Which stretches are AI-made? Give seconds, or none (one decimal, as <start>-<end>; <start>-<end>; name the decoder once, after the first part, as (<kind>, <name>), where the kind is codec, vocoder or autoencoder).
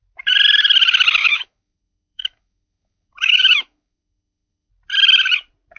1.2-4.7 (autoencoder, DAC-VAE)